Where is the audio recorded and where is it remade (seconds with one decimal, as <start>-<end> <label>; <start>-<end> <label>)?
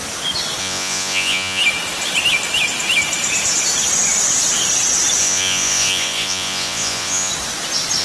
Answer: 0.0-0.6 recorded; 0.6-1.6 remade; 1.6-5.2 recorded; 5.2-7.3 remade; 7.3-8.0 recorded